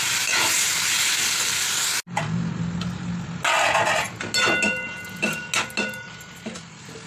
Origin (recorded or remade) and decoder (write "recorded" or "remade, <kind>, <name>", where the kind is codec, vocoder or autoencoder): recorded